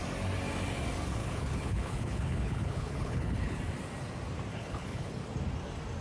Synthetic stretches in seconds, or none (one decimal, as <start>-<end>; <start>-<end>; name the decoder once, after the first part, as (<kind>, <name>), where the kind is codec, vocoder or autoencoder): 1.2-3.6 (codec, HILCodec); 4.5-5.1